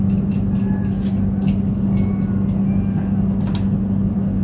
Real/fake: real